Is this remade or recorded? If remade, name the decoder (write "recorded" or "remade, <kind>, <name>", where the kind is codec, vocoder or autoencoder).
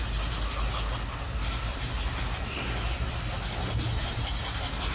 recorded